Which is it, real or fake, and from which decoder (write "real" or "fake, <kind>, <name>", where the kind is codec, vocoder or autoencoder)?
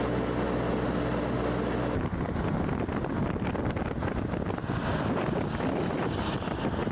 real